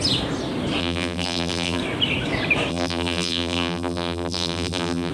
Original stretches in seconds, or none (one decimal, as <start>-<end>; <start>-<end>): 0.0-0.8; 1.8-2.7

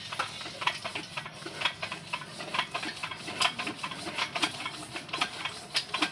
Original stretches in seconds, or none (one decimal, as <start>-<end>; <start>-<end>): 0.0-3.0; 5.5-6.1

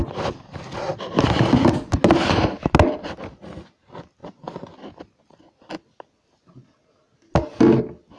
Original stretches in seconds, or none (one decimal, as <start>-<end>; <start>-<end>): 0.0-8.2

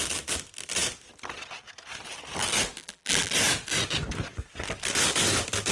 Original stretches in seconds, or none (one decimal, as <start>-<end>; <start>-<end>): 0.0-2.8; 3.3-5.7

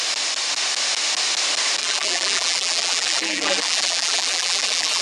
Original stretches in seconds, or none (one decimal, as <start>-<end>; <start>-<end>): 0.0-1.8

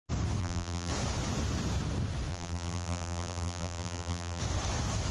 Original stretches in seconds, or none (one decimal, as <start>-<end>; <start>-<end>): 0.0-0.4; 0.9-2.3; 4.4-5.1

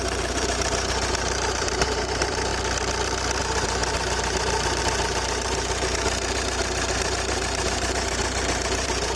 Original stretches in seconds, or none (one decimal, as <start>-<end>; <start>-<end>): 2.5-3.4